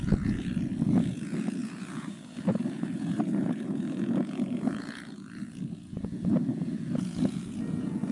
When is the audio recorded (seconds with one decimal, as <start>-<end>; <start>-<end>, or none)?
none

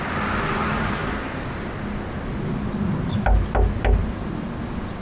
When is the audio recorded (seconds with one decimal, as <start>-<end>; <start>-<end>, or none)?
0.0-5.0